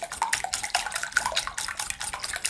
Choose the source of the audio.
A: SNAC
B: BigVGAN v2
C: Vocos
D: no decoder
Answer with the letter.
D